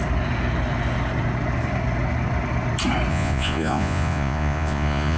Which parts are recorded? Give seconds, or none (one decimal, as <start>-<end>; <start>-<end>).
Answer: 0.0-3.1